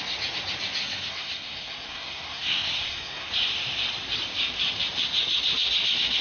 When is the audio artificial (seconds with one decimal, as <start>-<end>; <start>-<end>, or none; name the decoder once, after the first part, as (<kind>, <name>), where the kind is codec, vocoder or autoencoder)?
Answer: 0.8-3.3 (codec, SNAC)